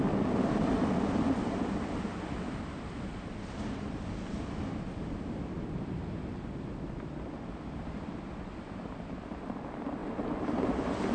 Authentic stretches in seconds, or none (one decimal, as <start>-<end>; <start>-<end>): 0.0-11.1